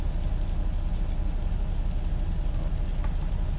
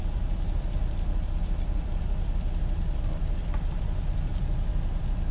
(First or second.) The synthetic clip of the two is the second